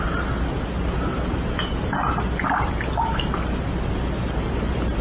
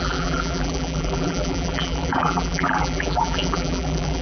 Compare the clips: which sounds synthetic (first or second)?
second